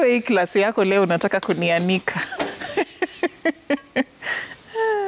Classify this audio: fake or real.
real